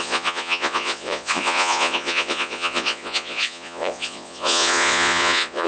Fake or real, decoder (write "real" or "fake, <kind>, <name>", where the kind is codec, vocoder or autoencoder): fake, vocoder, Vocos